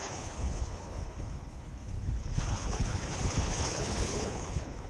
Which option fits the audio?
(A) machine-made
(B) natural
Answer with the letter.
A